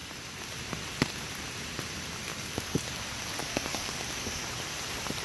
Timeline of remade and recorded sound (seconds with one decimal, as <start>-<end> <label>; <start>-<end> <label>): 0.0-2.3 recorded; 2.3-3.0 remade; 3.0-3.4 recorded; 3.4-4.4 remade; 4.4-5.2 recorded